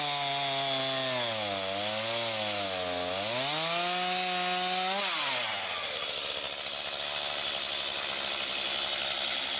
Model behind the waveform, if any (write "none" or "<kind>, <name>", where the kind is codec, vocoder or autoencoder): none